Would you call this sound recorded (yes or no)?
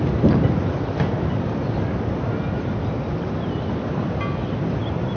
yes